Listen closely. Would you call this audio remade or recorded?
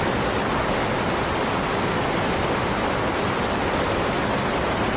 recorded